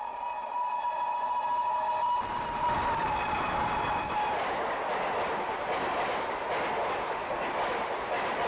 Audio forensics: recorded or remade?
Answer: recorded